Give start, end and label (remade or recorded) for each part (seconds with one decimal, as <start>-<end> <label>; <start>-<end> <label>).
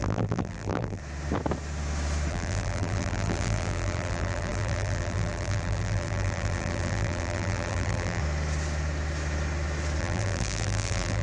0.0-1.0 remade; 1.0-2.3 recorded; 2.3-8.2 remade; 8.2-10.0 recorded; 10.0-11.2 remade